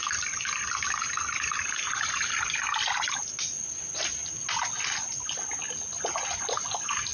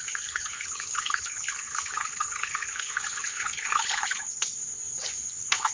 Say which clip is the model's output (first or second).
second